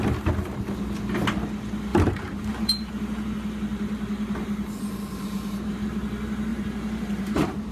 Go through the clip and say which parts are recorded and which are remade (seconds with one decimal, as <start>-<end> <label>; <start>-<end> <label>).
0.0-1.9 recorded; 1.9-2.9 remade; 2.9-3.7 recorded; 3.7-6.0 remade; 6.0-6.5 recorded; 6.5-7.7 remade